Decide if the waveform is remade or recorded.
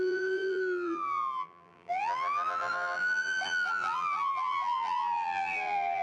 remade